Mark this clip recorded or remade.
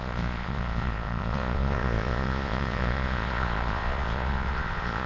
remade